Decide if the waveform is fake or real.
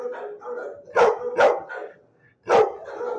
real